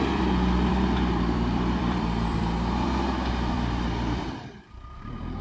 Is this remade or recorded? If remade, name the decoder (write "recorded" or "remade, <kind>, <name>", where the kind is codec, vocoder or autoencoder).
remade, vocoder, BigVGAN v2